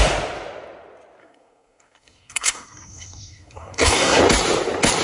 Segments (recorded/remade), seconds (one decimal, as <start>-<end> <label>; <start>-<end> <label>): 0.0-1.2 recorded; 1.2-4.2 remade; 4.2-5.0 recorded